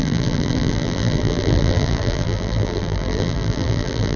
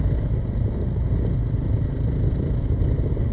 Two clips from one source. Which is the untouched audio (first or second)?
second